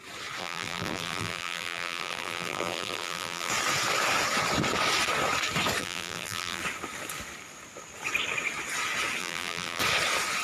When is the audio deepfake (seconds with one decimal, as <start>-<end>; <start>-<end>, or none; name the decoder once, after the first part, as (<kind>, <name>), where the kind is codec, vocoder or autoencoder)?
0.4-3.5 (vocoder, BigVGAN v2); 5.8-6.6; 9.2-9.8